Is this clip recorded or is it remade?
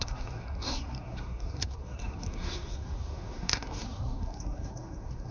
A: remade